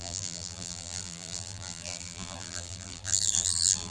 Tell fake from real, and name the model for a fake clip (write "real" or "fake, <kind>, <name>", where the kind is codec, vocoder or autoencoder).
fake, vocoder, BigVGAN v2